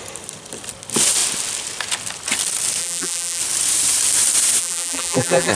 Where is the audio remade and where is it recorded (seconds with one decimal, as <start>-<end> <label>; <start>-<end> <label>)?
0.0-2.8 recorded; 2.8-3.4 remade; 3.4-4.6 recorded; 4.6-5.5 remade